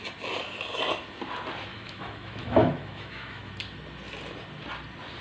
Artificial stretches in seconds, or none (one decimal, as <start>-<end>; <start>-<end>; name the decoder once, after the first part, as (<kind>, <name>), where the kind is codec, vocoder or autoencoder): 1.7-3.5 (autoencoder, DAC-VAE)